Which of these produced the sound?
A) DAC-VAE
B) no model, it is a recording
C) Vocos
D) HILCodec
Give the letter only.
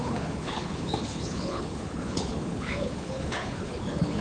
D